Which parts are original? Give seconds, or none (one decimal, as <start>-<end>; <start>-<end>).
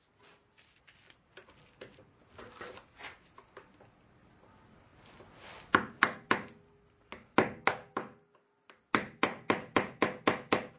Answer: 0.0-10.8